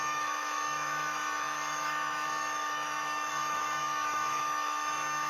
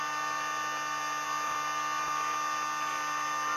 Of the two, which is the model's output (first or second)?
first